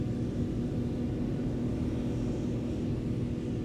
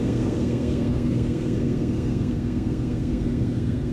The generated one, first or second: second